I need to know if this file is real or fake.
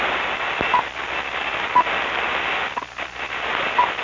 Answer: real